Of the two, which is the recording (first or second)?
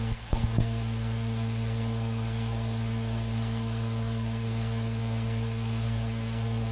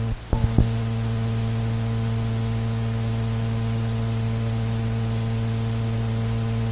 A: second